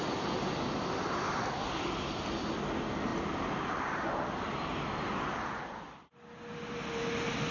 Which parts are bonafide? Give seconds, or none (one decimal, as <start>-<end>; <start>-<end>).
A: 0.0-7.5